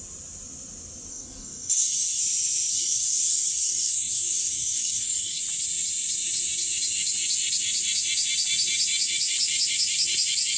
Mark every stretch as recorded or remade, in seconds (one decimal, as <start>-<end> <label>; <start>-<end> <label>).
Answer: 0.0-1.1 recorded; 1.1-2.2 remade; 2.2-2.7 recorded; 2.7-5.4 remade; 5.4-10.6 recorded